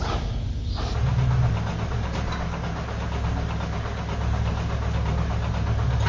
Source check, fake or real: real